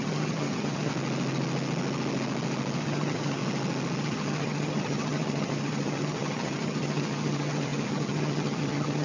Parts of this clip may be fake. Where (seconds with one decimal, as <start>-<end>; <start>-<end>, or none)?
0.0-0.9; 2.8-3.4; 4.0-9.0